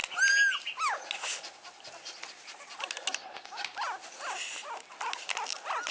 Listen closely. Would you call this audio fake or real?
real